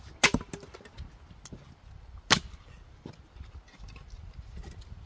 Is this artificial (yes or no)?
no